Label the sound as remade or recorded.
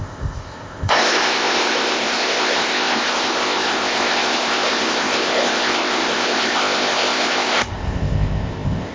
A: remade